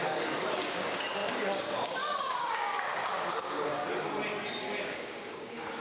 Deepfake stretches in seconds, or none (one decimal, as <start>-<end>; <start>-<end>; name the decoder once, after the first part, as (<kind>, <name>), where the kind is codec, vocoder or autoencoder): 0.0-3.8 (codec, DAC); 4.8-5.8